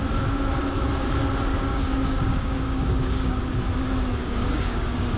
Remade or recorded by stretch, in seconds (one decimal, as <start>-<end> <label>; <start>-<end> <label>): 0.0-1.5 recorded; 1.5-3.4 remade; 3.4-4.2 recorded; 4.2-5.2 remade